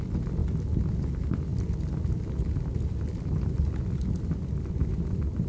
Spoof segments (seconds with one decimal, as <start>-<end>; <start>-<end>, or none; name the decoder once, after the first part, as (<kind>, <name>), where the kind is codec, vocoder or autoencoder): none